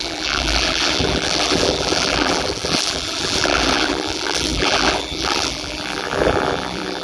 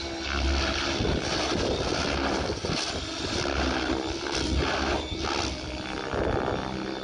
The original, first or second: second